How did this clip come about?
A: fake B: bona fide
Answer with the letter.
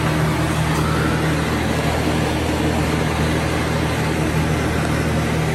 B